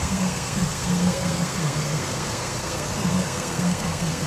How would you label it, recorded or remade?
remade